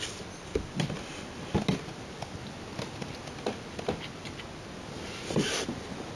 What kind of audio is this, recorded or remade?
recorded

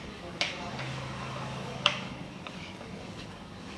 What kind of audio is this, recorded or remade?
remade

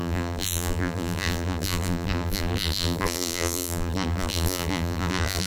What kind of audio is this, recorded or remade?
remade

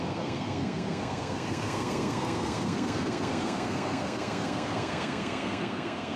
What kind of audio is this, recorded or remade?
remade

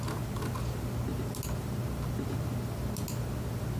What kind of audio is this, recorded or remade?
recorded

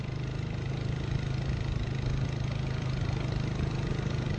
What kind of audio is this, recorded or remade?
recorded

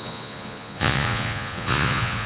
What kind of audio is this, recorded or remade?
remade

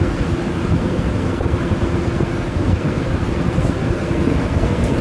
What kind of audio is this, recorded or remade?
remade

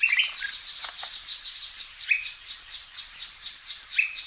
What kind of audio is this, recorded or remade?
recorded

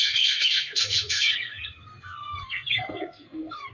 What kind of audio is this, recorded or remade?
remade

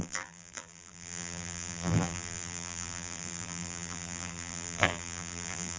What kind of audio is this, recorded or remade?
remade